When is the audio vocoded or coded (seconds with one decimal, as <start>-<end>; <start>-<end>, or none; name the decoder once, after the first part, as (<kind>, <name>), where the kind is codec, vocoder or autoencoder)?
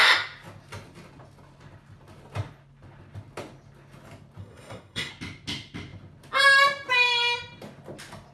4.4-5.1 (codec, SNAC)